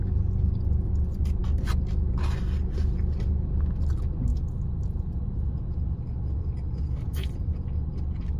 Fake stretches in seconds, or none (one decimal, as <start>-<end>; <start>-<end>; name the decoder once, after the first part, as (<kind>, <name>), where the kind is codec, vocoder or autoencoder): 4.3-7.5 (vocoder, Vocos)